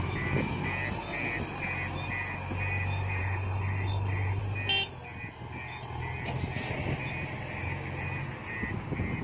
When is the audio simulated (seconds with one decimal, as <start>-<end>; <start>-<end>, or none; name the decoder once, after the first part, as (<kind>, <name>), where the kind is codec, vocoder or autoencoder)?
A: 3.2-4.4 (codec, HILCodec)